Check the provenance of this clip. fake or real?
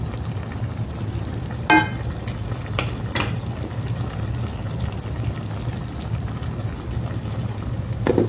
real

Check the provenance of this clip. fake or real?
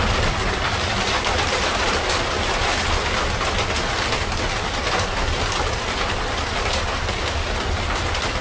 real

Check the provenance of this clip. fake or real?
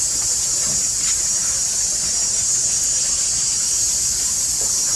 real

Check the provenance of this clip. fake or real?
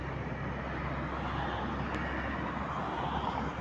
real